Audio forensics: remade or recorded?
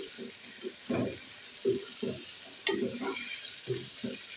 recorded